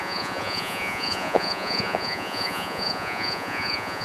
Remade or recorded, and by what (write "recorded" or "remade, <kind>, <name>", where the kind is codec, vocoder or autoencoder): remade, vocoder, Vocos